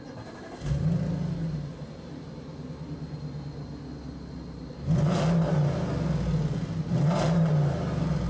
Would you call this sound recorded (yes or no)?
yes